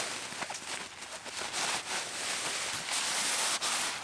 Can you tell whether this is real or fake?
real